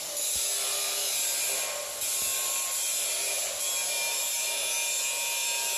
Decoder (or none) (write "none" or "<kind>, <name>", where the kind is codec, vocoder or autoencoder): none